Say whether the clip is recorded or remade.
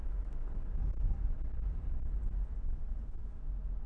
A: recorded